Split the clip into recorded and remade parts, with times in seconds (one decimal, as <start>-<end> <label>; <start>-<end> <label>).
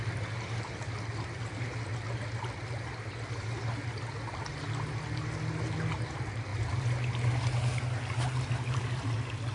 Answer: 0.0-9.5 recorded